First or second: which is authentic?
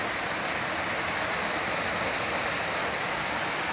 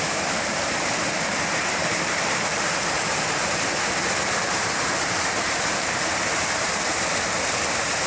first